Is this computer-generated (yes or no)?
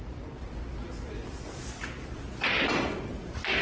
yes